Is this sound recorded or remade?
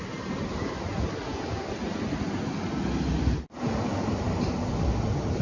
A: recorded